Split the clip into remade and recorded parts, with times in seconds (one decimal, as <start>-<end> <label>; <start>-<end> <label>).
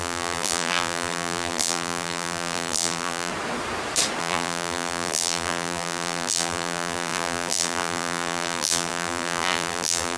0.0-3.3 remade; 3.3-4.2 recorded; 4.2-10.2 remade